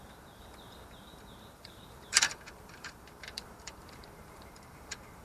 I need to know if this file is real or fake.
fake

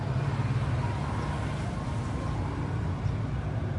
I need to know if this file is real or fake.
fake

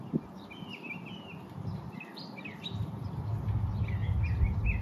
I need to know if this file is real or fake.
real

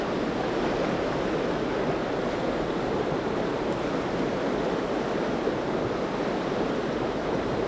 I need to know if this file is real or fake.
real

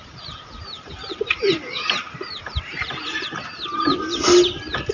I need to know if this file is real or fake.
fake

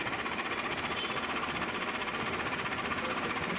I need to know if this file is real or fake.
fake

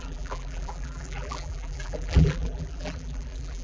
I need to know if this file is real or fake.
fake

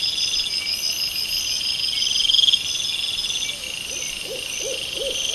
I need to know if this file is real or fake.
real